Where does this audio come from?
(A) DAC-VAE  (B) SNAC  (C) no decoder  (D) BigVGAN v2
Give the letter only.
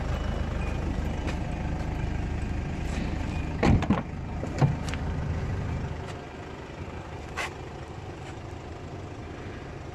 C